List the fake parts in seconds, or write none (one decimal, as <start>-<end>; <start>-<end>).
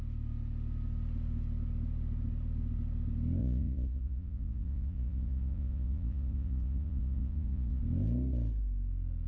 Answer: 3.4-7.8